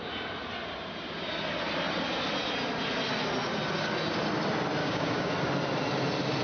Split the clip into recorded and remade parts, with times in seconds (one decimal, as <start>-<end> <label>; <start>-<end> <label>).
0.0-4.8 recorded; 4.8-5.3 remade; 5.3-6.4 recorded